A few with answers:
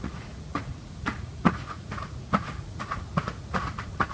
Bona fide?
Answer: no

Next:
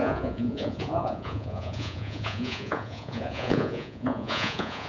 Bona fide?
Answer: no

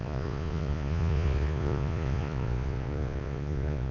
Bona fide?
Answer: no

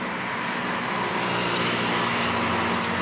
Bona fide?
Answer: yes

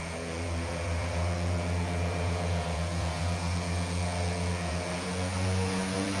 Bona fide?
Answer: no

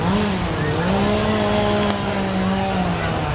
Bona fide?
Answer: yes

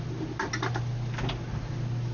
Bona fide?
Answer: yes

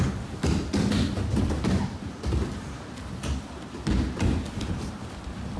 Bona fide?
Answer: yes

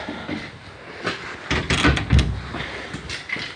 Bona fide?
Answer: yes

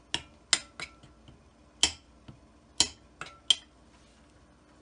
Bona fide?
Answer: yes